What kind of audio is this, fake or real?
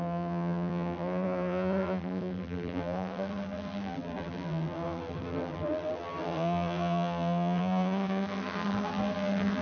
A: fake